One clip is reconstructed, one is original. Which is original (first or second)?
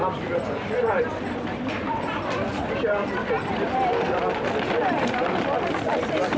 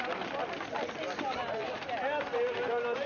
second